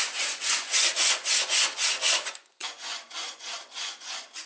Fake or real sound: fake